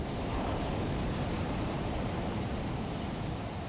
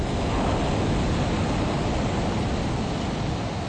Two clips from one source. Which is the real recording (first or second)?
second